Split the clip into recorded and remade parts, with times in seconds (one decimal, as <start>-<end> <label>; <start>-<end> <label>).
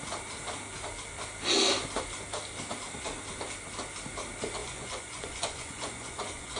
0.0-4.6 recorded; 4.6-6.6 remade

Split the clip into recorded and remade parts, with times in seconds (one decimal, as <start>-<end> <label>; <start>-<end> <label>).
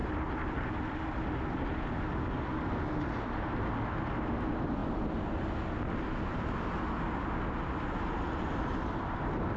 0.0-9.6 recorded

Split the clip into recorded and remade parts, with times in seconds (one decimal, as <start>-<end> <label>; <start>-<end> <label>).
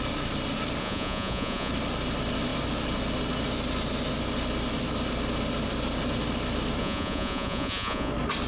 0.0-0.8 recorded; 0.8-1.7 remade; 1.7-6.8 recorded; 6.8-8.1 remade; 8.1-8.5 recorded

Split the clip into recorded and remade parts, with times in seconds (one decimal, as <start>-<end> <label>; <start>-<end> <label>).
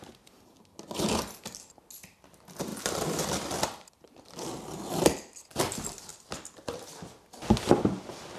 0.0-2.7 recorded; 2.7-3.9 remade; 3.9-6.1 recorded; 6.1-6.8 remade; 6.8-8.4 recorded